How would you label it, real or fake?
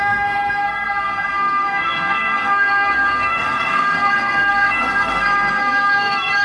fake